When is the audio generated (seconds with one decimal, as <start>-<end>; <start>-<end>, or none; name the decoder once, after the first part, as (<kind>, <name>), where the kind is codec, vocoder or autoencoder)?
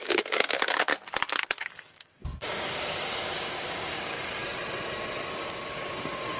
0.0-0.9 (codec, DAC); 1.7-4.4; 5.3-6.4